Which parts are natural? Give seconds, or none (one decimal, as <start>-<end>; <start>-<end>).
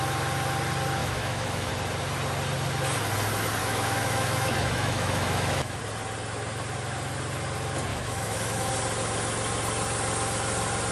0.0-1.0; 1.7-3.6; 5.8-7.9; 8.7-10.9